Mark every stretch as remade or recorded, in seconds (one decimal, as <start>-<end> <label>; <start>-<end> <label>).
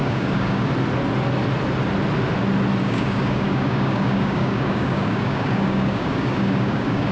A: 0.0-0.7 remade; 0.7-2.8 recorded; 2.8-7.1 remade